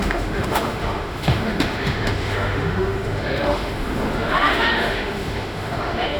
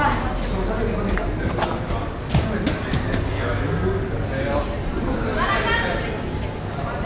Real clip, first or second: second